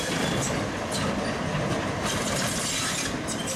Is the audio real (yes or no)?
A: no